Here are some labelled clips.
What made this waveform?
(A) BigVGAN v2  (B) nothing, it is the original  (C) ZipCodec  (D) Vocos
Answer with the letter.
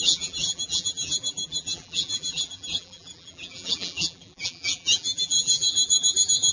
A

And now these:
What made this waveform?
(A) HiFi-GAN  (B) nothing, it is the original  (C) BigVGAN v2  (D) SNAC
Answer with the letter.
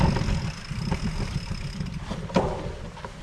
B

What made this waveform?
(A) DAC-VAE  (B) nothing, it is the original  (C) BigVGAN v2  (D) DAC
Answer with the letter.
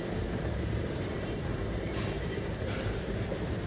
C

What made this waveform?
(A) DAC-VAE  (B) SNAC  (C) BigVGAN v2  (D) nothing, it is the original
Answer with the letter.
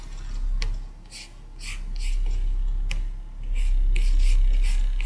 D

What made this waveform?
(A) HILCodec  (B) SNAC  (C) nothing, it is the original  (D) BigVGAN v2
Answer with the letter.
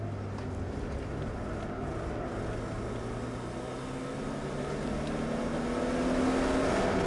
C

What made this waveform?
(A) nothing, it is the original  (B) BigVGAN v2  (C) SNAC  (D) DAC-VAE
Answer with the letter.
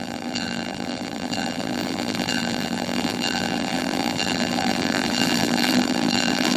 B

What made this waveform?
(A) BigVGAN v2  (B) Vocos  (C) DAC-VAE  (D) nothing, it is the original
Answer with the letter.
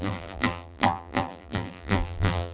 A